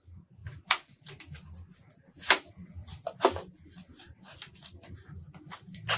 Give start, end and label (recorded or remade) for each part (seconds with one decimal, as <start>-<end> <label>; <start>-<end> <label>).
0.0-6.0 recorded